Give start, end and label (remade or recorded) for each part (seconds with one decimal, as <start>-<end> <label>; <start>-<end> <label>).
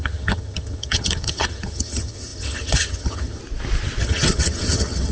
0.0-3.4 remade; 3.4-4.0 recorded; 4.0-5.1 remade